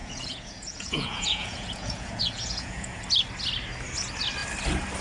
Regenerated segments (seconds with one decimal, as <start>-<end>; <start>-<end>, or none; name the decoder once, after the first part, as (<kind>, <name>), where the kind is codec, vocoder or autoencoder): 0.0-3.0 (vocoder, Vocos)